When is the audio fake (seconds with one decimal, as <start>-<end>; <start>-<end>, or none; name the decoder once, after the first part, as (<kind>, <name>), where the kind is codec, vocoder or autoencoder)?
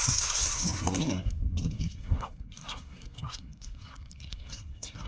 0.0-5.1 (codec, SNAC)